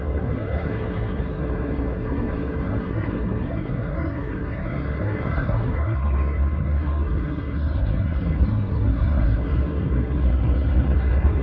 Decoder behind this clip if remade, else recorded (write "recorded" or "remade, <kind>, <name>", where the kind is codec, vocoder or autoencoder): remade, codec, SNAC